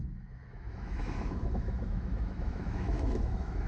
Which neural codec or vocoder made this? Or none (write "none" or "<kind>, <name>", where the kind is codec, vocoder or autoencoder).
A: autoencoder, DAC-VAE